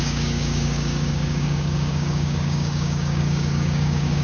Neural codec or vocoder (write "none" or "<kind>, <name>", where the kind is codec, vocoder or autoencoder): codec, DAC